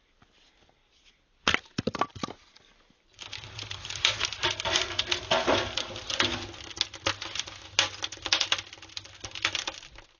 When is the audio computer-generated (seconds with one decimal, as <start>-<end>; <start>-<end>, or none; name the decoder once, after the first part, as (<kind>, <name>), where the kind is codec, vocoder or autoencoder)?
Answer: 2.1-3.9 (vocoder, BigVGAN v2)

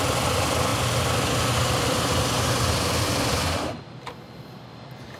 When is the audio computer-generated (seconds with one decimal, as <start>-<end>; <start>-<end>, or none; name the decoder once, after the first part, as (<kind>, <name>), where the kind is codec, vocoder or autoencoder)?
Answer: none

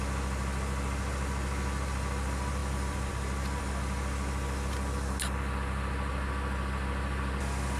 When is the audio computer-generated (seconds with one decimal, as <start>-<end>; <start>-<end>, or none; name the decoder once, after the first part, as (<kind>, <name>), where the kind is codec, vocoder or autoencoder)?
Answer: 2.6-3.1 (vocoder, BigVGAN v2)

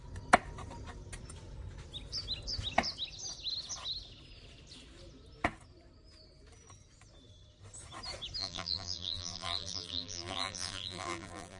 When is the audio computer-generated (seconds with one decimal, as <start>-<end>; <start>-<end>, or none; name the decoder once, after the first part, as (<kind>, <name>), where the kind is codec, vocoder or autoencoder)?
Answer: 8.4-11.6 (vocoder, BigVGAN v2)

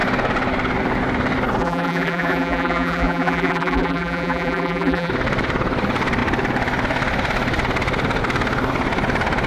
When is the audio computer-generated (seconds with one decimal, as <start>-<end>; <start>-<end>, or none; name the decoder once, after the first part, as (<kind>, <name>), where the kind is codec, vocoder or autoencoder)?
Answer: 1.6-5.1 (vocoder, BigVGAN v2)